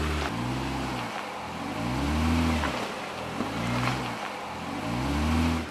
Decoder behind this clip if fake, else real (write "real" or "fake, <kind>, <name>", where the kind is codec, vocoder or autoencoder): real